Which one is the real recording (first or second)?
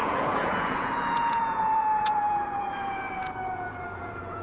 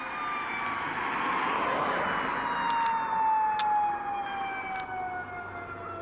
second